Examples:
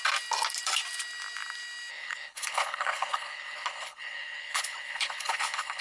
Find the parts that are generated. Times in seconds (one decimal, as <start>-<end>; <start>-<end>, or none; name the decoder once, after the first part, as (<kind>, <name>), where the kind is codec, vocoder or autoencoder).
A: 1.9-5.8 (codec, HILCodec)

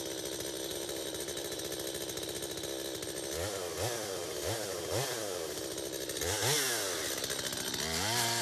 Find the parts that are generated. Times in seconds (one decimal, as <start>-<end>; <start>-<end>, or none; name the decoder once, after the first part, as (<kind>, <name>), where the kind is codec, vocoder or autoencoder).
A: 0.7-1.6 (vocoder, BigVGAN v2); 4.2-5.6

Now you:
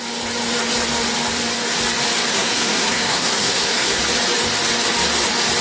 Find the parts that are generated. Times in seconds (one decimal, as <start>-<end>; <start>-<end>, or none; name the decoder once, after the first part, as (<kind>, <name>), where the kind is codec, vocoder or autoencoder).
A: 2.3-4.0 (codec, SNAC)

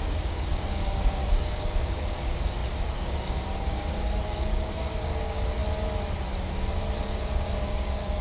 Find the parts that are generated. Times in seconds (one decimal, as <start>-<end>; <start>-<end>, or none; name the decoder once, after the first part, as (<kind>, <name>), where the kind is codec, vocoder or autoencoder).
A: 0.0-5.6 (codec, DAC); 7.0-8.2

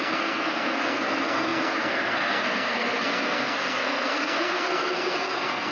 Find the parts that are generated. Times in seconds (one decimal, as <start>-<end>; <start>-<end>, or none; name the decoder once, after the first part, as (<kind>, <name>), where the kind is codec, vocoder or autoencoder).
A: 0.0-5.7 (codec, SNAC)

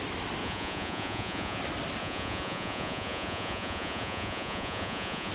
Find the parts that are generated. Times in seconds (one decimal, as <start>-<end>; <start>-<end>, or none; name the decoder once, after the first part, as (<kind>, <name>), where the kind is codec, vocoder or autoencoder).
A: 0.4-1.6 (vocoder, Vocos); 2.0-5.3

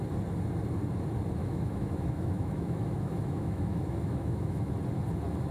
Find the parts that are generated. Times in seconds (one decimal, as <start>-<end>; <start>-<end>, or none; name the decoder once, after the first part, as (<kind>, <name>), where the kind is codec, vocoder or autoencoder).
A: 1.4-4.7 (autoencoder, DAC-VAE)

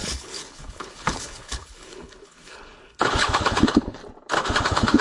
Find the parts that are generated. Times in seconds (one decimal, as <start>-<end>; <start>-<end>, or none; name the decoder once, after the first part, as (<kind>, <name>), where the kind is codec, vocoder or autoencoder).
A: 0.0-4.0 (codec, HILCodec); 4.6-5.0